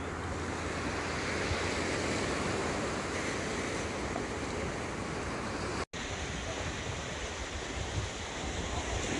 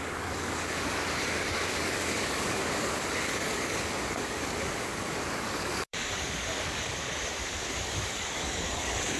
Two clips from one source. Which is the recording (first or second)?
first